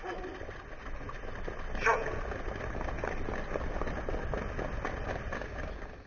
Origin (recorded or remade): recorded